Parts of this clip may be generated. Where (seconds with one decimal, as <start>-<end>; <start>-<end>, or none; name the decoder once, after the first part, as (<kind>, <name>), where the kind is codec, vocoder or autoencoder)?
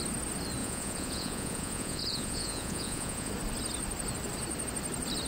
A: 0.6-3.3 (vocoder, Vocos)